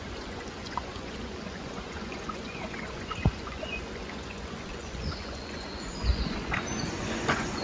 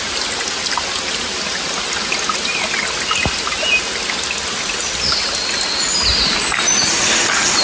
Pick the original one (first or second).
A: second